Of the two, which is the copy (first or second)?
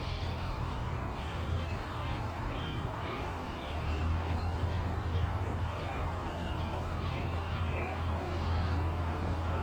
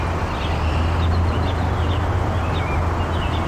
first